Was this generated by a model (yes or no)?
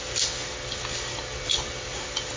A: no